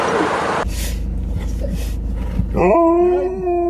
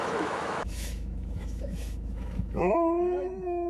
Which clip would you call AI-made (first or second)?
second